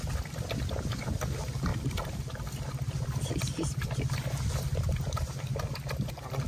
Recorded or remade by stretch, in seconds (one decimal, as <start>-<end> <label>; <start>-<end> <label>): 0.0-1.7 recorded; 1.7-4.6 remade; 4.6-6.5 recorded